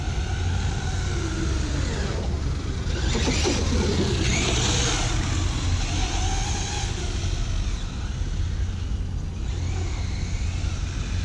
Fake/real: real